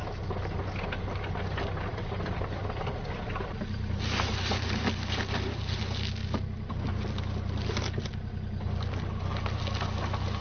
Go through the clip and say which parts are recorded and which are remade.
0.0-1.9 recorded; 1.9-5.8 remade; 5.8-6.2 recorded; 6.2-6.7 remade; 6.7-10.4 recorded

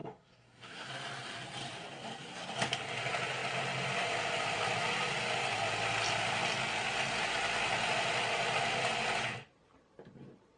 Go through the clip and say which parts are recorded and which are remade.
0.0-0.9 remade; 0.9-10.6 recorded

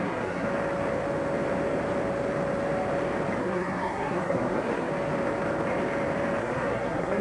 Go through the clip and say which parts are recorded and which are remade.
0.0-0.5 remade; 0.5-3.4 recorded; 3.4-4.9 remade; 4.9-6.4 recorded; 6.4-7.2 remade